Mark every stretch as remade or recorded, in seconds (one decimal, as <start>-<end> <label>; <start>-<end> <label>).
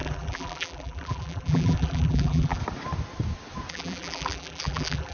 0.0-2.6 remade; 2.6-3.7 recorded; 3.7-5.1 remade